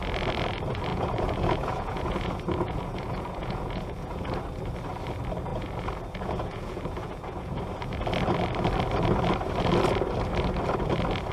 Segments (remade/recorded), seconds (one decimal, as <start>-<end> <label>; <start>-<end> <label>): 0.0-0.9 recorded; 0.9-4.3 remade; 4.3-5.5 recorded; 5.5-7.6 remade; 7.6-11.3 recorded